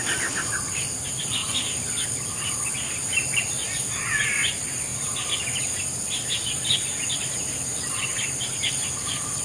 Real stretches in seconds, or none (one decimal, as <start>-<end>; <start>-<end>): 0.0-9.4